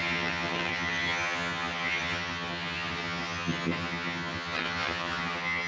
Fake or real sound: fake